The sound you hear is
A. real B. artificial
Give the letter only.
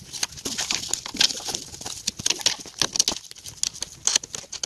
A